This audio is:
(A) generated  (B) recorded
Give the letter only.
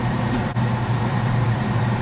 A